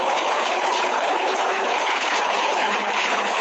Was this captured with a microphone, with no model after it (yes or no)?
no